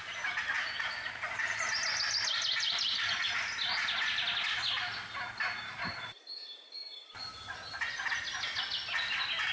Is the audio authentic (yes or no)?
yes